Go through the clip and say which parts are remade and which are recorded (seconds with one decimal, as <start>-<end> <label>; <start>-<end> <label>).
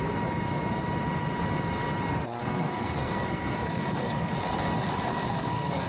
0.0-2.4 recorded; 2.4-4.3 remade; 4.3-5.1 recorded; 5.1-5.9 remade